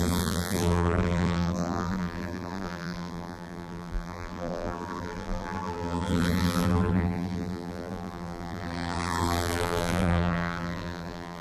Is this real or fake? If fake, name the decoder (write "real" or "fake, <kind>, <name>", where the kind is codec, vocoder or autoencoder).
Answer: fake, vocoder, BigVGAN v2